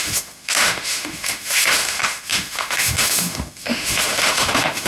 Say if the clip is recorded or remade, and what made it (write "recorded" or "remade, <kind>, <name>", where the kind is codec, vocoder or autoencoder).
remade, autoencoder, DAC-VAE